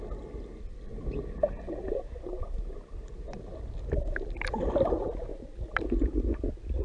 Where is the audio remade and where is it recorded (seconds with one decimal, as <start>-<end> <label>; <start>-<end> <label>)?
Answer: 0.0-6.8 recorded